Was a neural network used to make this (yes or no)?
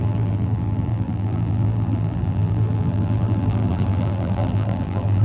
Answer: yes